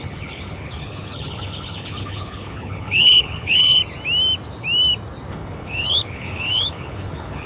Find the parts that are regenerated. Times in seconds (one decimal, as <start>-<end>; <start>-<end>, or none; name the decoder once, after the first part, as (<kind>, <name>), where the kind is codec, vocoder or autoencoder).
0.0-3.8 (codec, HILCodec); 5.3-7.5